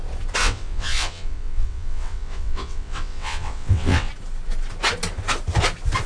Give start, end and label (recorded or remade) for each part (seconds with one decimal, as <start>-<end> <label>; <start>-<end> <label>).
0.0-0.4 recorded; 0.4-4.1 remade; 4.1-6.1 recorded